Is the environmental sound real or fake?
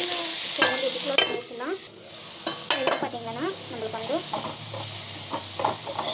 real